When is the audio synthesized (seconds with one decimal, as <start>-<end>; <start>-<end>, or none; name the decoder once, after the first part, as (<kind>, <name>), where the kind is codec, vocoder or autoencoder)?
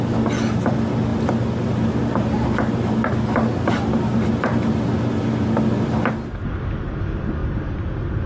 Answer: 7.4-8.3 (vocoder, BigVGAN v2)